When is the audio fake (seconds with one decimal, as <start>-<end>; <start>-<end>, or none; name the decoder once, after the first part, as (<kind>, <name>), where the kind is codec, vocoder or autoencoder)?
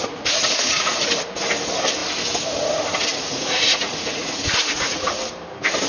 0.0-1.1 (vocoder, Vocos); 3.1-5.1